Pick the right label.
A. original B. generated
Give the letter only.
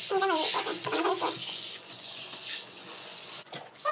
B